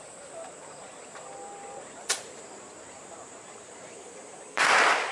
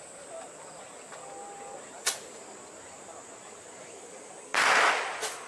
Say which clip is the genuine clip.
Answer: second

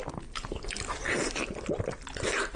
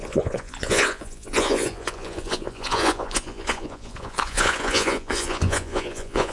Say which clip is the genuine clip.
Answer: first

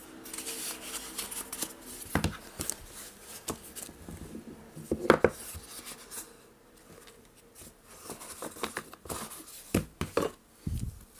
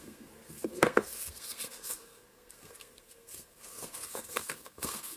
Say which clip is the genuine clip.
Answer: first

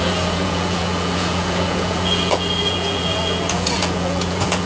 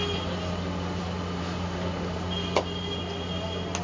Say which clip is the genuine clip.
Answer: second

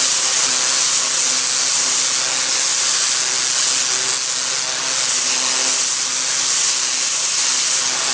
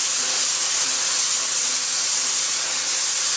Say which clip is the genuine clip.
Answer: first